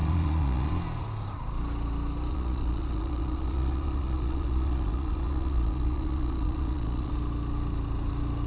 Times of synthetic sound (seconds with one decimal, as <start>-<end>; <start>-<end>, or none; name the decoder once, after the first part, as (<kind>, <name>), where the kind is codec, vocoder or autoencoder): 0.0-0.7 (vocoder, Vocos); 2.3-7.1